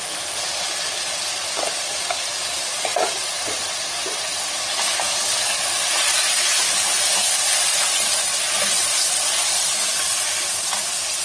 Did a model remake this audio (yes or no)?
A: no